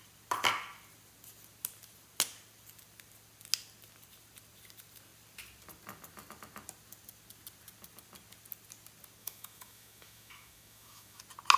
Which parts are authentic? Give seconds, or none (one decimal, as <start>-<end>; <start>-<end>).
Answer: 0.0-9.2; 11.2-11.6